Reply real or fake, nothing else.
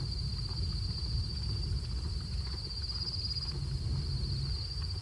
real